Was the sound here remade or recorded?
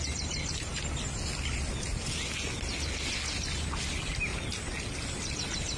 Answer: recorded